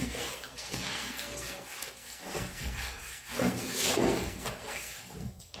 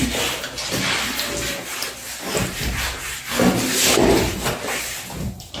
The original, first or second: second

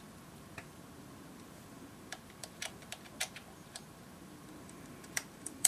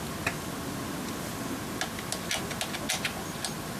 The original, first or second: second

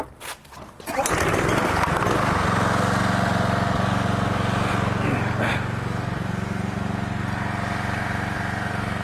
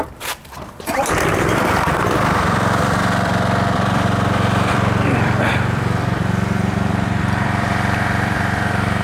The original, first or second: first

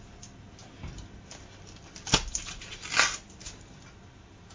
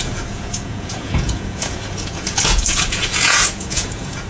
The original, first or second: first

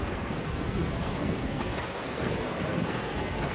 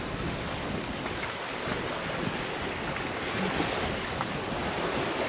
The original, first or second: second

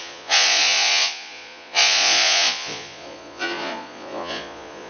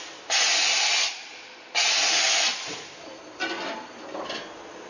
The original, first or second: second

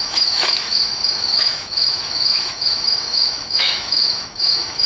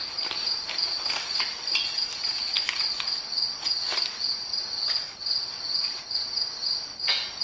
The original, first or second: second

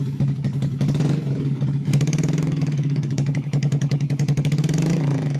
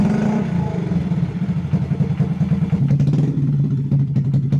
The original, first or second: second